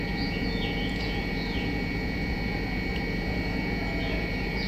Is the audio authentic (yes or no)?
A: no